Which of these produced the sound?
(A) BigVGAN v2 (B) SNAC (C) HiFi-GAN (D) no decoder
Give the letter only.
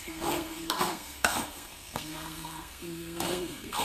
B